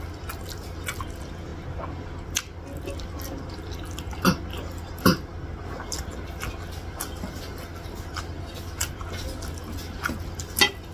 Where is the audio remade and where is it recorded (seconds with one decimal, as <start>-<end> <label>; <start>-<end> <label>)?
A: 0.0-10.9 recorded